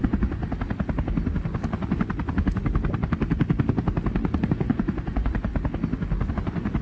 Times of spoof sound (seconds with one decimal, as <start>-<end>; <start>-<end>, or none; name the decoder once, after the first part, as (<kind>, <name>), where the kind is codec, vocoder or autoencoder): 0.0-0.4 (vocoder, Vocos); 4.5-5.5; 6.3-6.8